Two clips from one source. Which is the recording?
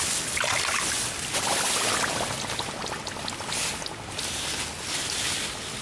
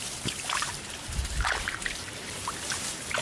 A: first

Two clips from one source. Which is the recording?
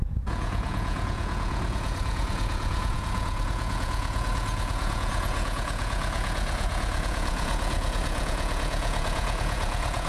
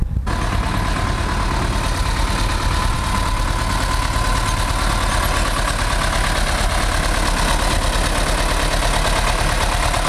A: second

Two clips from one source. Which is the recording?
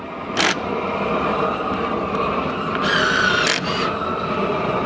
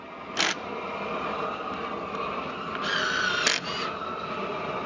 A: second